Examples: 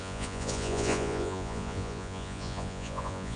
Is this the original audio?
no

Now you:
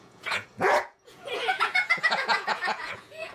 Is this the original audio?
no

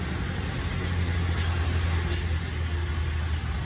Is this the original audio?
yes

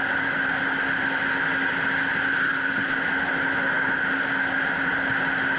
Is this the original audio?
yes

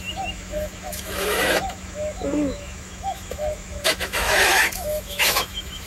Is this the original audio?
no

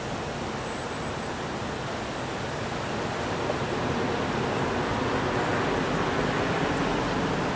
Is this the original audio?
yes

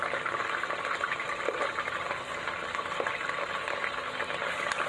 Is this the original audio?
yes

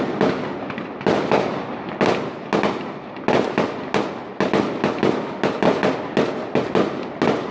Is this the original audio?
yes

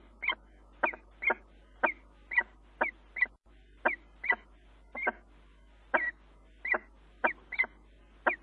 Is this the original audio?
yes